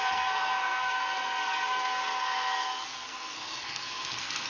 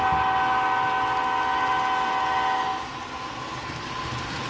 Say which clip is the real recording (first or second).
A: second